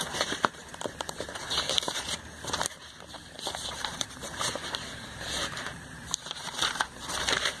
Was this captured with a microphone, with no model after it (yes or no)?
no